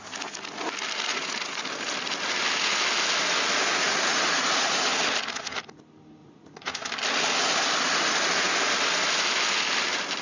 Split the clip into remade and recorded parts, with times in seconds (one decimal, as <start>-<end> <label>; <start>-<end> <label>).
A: 0.0-1.1 recorded; 1.1-1.6 remade; 1.6-3.7 recorded; 3.7-5.0 remade; 5.0-6.2 recorded; 6.2-6.7 remade; 6.7-10.2 recorded